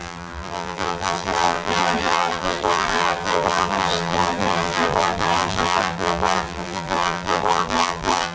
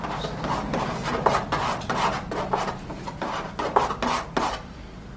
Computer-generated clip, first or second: first